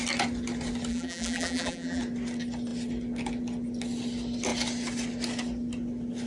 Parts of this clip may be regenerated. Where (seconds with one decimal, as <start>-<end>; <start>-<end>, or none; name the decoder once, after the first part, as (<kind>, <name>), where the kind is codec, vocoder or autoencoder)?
0.9-2.0 (vocoder, BigVGAN v2)